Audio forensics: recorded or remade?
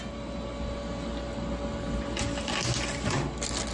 recorded